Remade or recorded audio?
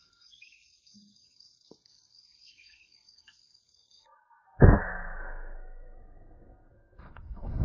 remade